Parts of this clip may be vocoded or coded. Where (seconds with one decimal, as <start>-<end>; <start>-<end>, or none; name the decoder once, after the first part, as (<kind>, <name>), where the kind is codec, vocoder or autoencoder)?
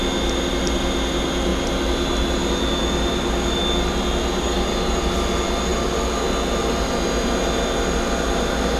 none